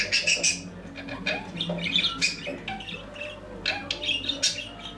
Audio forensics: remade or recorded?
recorded